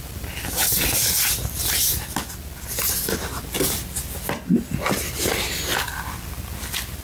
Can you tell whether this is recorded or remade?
recorded